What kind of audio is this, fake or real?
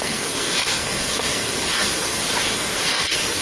fake